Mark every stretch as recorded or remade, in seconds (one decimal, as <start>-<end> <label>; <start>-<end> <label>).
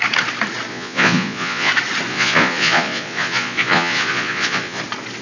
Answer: 0.0-0.7 recorded; 0.7-1.7 remade; 1.7-2.1 recorded; 2.1-4.8 remade; 4.8-5.2 recorded